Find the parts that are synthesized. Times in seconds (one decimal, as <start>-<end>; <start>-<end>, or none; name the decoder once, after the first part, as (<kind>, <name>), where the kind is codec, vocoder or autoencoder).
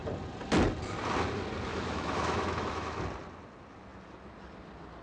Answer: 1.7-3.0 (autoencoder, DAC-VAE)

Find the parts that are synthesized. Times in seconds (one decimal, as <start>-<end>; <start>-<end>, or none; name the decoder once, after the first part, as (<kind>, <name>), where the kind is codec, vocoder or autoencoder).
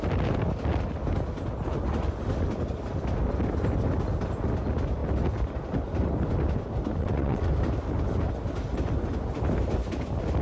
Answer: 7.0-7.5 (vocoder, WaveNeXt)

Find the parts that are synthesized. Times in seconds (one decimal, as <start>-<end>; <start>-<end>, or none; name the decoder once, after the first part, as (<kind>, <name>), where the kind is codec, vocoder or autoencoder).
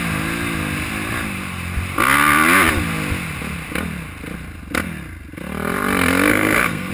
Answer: 6.3-6.9 (codec, SNAC)